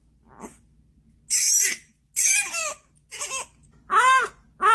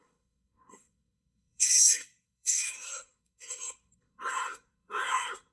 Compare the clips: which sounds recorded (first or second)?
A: first